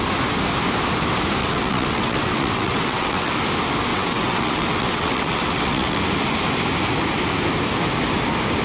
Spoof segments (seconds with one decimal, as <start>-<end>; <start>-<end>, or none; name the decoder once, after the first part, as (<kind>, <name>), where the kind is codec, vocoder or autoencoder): 1.4-3.3 (vocoder, WaveNeXt); 3.9-6.0